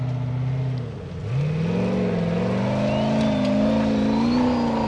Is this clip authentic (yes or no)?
yes